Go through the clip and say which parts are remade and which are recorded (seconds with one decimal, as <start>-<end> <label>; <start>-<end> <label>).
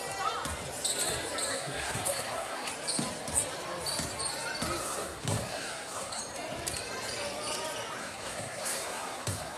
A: 0.0-1.5 recorded; 1.5-2.7 remade; 2.7-4.8 recorded; 4.8-6.2 remade; 6.2-8.0 recorded; 8.0-9.6 remade